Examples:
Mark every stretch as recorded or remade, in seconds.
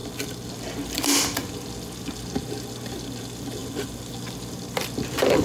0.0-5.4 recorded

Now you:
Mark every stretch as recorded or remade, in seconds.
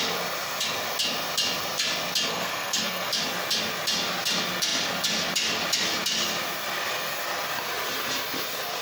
0.0-2.3 recorded; 2.3-3.1 remade; 3.1-8.8 recorded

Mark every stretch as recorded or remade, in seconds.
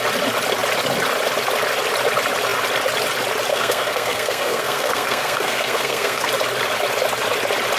0.0-3.5 recorded; 3.5-6.3 remade; 6.3-7.8 recorded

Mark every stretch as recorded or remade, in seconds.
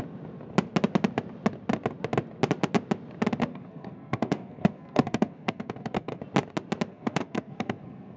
0.0-3.5 recorded; 3.5-6.2 remade; 6.2-6.9 recorded; 6.9-8.2 remade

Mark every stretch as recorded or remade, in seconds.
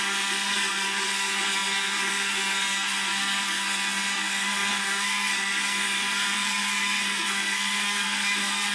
0.0-8.7 remade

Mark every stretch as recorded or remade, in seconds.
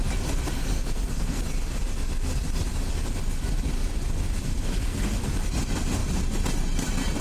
0.0-0.6 recorded; 0.6-1.4 remade; 1.4-4.4 recorded; 4.4-5.3 remade; 5.3-7.2 recorded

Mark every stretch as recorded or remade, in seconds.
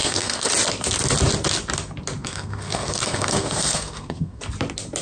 0.0-0.5 remade; 0.5-2.2 recorded; 2.2-4.4 remade; 4.4-5.0 recorded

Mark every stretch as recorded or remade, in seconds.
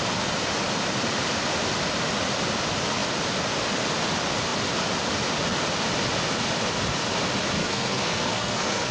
0.0-7.6 recorded; 7.6-8.9 remade